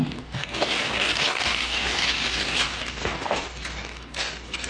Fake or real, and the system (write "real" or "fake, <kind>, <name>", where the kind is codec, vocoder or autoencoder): fake, codec, DAC